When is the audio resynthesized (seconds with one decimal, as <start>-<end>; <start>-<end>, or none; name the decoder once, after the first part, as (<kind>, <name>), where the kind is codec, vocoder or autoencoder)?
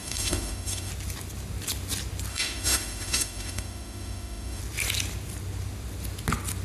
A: 0.0-0.9 (autoencoder, DAC-VAE); 2.3-4.6